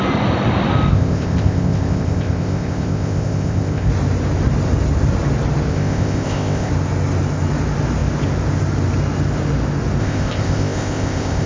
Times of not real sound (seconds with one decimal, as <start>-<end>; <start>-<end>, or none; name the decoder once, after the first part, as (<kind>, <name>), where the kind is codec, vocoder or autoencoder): 0.9-3.9 (codec, ZipCodec); 5.7-6.7; 10.0-11.5